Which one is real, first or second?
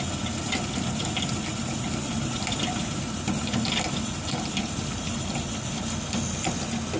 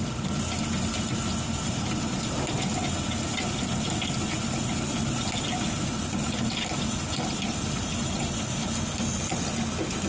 second